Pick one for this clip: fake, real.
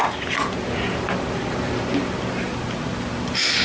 real